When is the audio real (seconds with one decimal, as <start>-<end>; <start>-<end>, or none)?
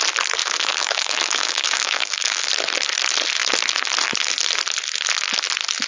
0.0-0.4; 2.5-5.9